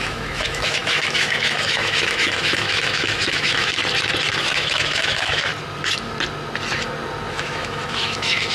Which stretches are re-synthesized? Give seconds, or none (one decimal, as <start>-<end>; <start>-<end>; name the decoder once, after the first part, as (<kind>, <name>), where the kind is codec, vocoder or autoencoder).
0.0-3.8 (autoencoder, DAC-VAE); 4.4-5.5; 7.3-8.5